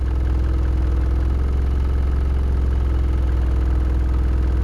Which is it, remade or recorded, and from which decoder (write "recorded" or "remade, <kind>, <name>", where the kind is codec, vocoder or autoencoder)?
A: recorded